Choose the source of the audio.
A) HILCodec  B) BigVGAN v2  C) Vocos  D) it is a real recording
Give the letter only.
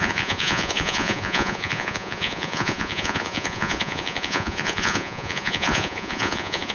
C